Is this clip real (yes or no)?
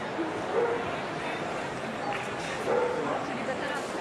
yes